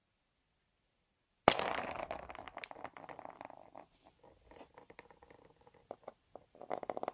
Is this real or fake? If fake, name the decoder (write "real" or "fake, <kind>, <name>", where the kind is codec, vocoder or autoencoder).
real